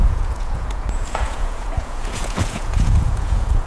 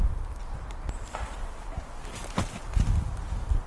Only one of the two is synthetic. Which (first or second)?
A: first